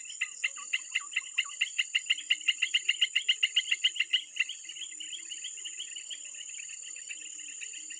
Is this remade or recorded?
recorded